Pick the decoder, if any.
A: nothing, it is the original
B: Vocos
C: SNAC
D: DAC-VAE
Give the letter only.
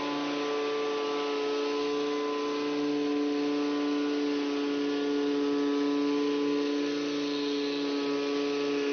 A